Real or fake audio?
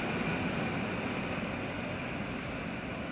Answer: real